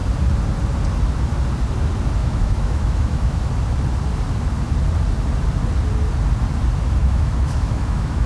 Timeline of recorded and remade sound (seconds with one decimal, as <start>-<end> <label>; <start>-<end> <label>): 0.0-2.2 recorded; 2.2-3.5 remade; 3.5-7.0 recorded; 7.0-8.3 remade